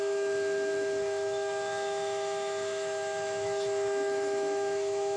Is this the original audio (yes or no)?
no